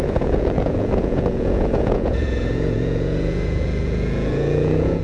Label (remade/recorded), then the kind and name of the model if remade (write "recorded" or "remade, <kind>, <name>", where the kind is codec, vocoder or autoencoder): remade, vocoder, Vocos